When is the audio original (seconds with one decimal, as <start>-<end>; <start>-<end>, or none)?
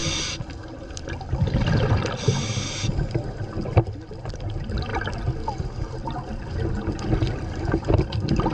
0.0-8.5